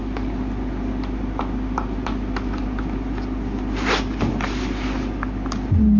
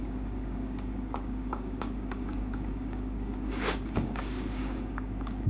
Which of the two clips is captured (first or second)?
first